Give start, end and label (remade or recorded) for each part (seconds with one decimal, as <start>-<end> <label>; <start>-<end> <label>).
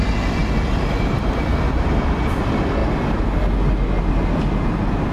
0.0-2.8 remade; 2.8-5.1 recorded